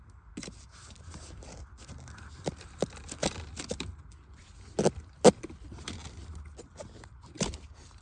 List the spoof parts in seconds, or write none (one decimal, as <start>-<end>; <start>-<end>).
none